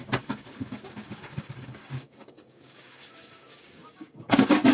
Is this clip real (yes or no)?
no